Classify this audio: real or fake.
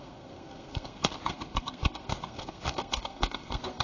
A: fake